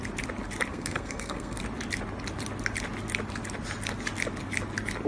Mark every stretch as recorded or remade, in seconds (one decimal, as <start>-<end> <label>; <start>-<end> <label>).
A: 0.0-0.7 recorded; 0.7-1.6 remade; 1.6-5.1 recorded